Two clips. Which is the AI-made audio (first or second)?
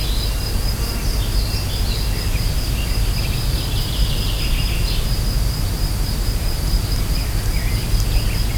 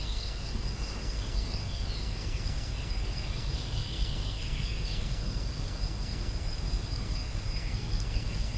second